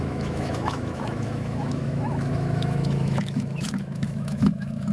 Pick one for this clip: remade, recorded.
remade